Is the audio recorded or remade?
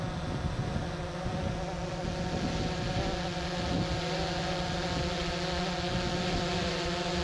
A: recorded